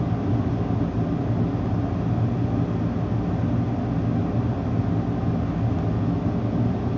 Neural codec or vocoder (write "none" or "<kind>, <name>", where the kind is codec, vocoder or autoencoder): none